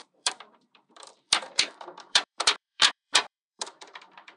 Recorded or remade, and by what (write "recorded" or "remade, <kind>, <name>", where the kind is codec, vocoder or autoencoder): remade, vocoder, BigVGAN v2